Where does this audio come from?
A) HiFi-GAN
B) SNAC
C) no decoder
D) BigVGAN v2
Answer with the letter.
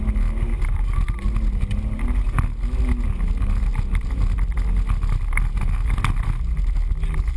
C